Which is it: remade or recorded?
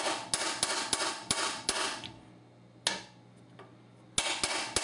recorded